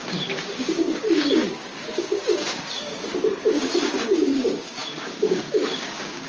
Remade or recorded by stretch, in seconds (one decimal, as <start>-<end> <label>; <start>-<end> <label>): 0.0-6.3 remade